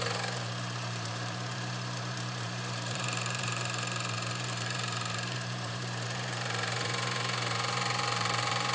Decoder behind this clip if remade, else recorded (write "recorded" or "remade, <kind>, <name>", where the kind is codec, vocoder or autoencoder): remade, vocoder, BigVGAN v2